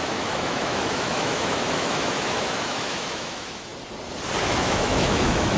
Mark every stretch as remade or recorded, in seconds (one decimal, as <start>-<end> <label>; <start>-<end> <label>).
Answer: 0.0-3.7 remade; 3.7-4.4 recorded; 4.4-5.6 remade